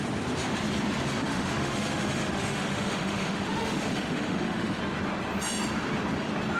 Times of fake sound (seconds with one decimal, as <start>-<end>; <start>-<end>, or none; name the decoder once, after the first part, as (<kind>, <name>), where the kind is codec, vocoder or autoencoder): 1.2-4.8 (autoencoder, DAC-VAE)